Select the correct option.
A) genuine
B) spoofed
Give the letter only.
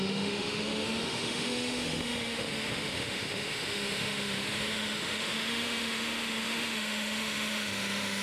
B